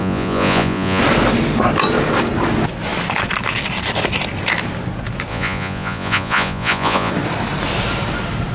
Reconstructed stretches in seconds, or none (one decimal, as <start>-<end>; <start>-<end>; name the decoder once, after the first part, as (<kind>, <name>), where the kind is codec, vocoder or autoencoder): 0.0-1.0 (vocoder, Vocos); 5.3-7.1